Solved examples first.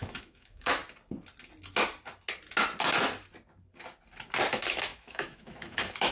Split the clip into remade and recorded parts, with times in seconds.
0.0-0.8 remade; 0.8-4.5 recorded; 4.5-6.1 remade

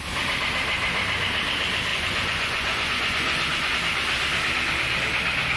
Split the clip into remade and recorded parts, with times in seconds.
0.0-1.9 recorded; 1.9-3.7 remade; 3.7-5.6 recorded

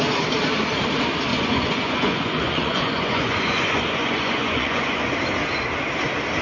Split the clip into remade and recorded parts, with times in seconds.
0.0-1.3 recorded; 1.3-5.1 remade; 5.1-6.4 recorded